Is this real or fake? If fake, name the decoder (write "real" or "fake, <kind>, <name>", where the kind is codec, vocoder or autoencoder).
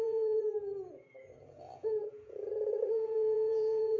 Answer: fake, vocoder, Vocos